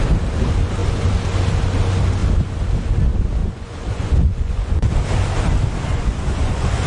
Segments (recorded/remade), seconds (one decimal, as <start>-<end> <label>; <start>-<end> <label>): 0.0-3.4 recorded; 3.4-4.9 remade; 4.9-5.9 recorded; 5.9-6.9 remade